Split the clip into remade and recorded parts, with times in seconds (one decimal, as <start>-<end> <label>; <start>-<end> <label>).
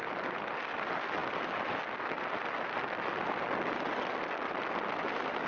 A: 0.0-5.5 recorded